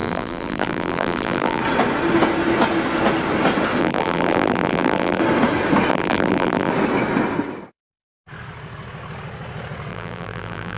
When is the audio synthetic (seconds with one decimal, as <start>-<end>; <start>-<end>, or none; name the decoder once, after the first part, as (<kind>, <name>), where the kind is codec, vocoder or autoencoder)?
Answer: 0.0-1.6 (vocoder, BigVGAN v2); 3.8-5.2; 5.9-6.7; 9.9-10.8